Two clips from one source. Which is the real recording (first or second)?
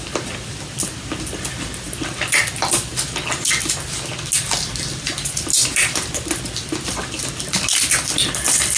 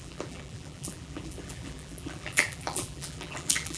first